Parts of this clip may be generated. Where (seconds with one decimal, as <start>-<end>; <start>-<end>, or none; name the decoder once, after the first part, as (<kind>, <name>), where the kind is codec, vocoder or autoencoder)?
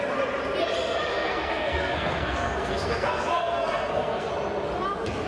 1.1-4.3 (codec, SNAC)